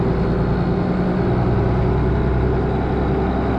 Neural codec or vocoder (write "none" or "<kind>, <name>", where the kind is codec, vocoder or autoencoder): none